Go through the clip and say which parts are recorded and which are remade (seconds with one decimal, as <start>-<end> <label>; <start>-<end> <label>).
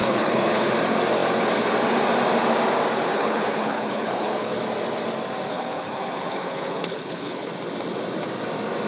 0.0-0.7 remade; 0.7-3.1 recorded; 3.1-4.6 remade; 4.6-5.5 recorded; 5.5-7.5 remade; 7.5-8.9 recorded